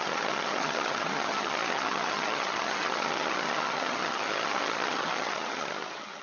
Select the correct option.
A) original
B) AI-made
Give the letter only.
B